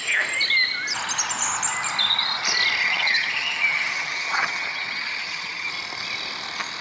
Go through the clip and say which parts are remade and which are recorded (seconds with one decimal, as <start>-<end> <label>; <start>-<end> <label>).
0.0-2.8 recorded; 2.8-5.7 remade; 5.7-6.8 recorded